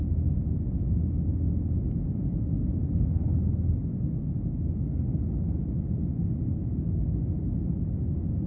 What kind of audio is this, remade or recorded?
recorded